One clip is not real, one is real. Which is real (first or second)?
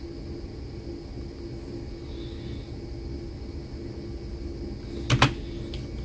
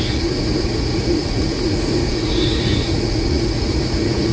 first